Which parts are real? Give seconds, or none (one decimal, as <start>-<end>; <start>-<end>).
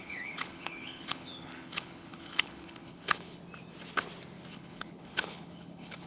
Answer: 3.4-4.5